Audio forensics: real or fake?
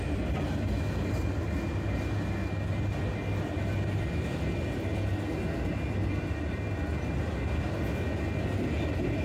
real